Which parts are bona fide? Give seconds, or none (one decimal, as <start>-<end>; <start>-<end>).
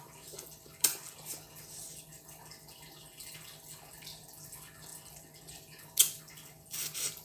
0.0-7.2